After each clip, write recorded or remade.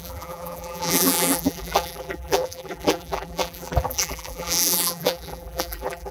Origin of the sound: remade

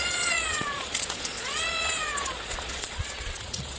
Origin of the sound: remade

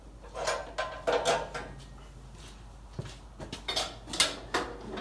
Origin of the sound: recorded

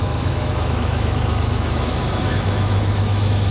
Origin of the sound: remade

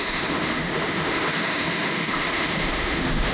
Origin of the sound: remade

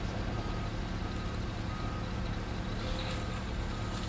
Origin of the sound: recorded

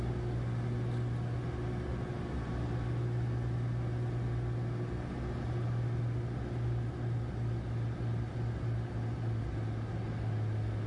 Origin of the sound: recorded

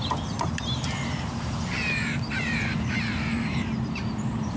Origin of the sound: remade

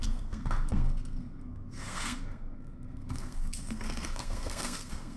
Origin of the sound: remade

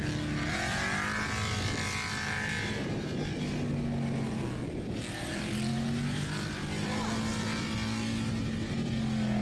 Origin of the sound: recorded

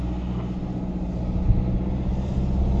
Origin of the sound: recorded